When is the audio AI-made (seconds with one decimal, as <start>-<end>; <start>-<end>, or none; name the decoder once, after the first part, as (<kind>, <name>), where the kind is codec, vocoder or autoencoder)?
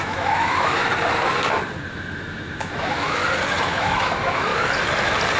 0.0-0.8 (autoencoder, DAC-VAE); 1.9-3.2; 3.7-4.5